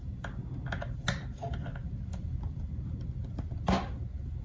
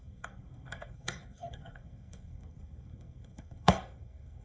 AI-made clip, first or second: second